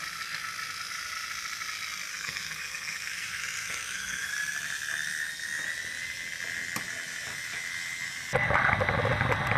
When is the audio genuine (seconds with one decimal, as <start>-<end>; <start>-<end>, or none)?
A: 0.0-2.1; 4.3-9.6